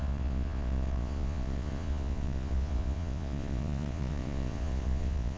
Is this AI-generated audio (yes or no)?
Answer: yes